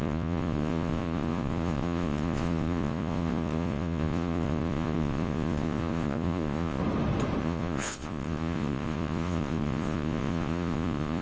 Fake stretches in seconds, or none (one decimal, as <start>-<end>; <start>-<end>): 0.0-6.8; 7.4-11.2